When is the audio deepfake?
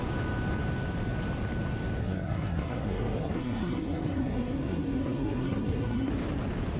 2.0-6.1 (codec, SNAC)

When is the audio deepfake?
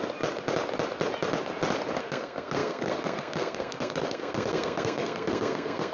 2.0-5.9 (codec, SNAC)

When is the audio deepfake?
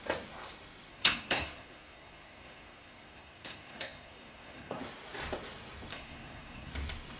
0.9-4.8 (codec, SNAC); 5.9-6.7